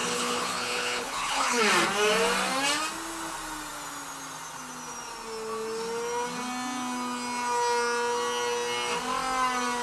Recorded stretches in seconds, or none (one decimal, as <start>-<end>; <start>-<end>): 1.6-9.8